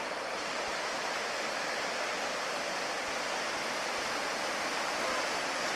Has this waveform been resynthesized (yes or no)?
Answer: no